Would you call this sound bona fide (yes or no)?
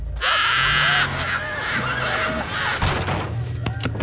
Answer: yes